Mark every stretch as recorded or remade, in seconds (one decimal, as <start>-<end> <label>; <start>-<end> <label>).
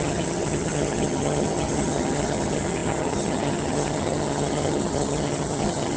0.0-6.0 remade